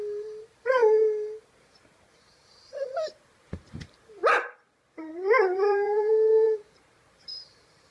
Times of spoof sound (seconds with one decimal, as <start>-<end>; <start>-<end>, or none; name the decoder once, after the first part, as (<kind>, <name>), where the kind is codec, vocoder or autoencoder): 0.0-0.8 (vocoder, BigVGAN v2); 2.4-7.9